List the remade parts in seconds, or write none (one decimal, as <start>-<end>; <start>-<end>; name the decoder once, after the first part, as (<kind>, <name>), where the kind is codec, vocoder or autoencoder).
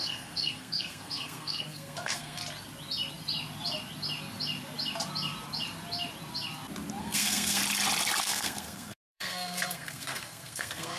0.0-2.4 (codec, SNAC); 7.0-7.6; 8.2-11.0